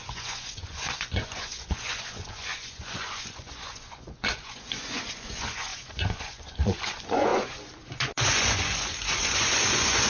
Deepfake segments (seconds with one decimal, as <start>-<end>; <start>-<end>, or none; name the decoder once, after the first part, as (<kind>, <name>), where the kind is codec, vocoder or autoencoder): 0.0-10.1 (vocoder, Vocos)